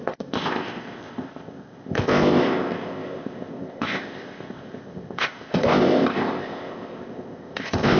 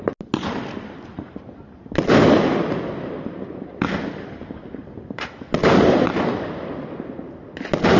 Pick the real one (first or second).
second